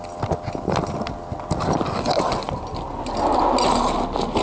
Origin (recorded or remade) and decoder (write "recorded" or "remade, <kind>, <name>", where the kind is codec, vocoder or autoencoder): recorded